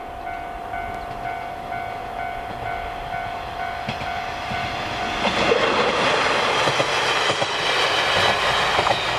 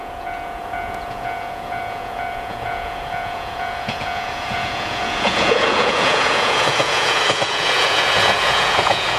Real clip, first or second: first